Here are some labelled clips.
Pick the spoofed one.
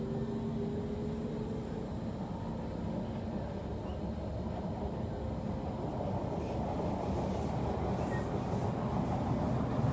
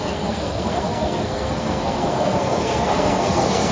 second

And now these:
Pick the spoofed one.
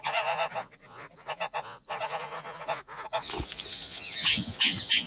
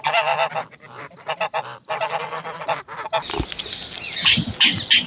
first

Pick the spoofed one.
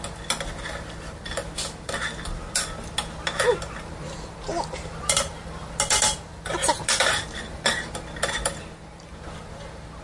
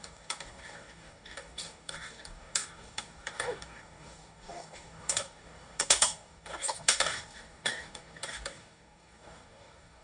second